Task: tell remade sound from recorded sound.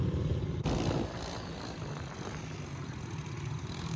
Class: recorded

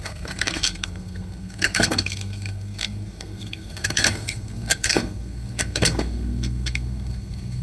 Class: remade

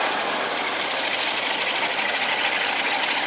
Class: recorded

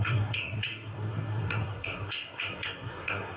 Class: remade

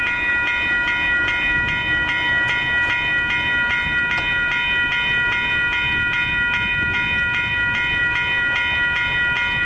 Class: recorded